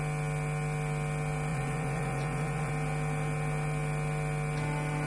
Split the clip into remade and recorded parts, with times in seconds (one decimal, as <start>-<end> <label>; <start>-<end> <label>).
0.0-1.5 recorded; 1.5-2.7 remade; 2.7-5.1 recorded